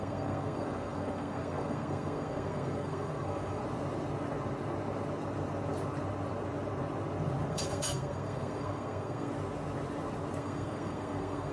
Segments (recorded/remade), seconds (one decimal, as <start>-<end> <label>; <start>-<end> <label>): 0.0-3.6 remade; 3.6-7.5 recorded; 7.5-9.3 remade; 9.3-10.4 recorded; 10.4-11.5 remade